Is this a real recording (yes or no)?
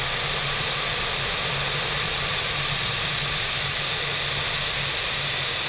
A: yes